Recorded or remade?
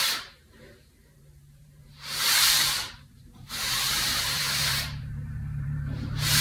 remade